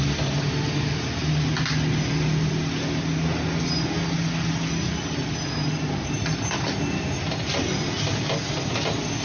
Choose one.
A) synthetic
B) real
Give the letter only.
B